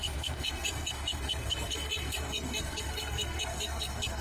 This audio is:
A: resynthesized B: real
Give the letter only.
A